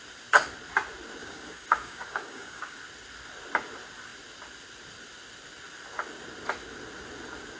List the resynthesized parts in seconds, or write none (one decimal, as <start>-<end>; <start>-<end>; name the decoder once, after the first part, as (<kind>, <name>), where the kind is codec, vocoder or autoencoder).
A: 1.2-2.8 (codec, DAC)